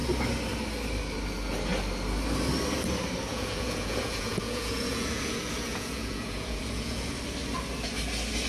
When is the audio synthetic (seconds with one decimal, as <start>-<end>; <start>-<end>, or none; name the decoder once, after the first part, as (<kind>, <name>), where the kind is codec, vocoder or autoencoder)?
3.3-7.1 (vocoder, Vocos)